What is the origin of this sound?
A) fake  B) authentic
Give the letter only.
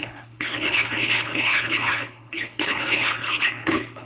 A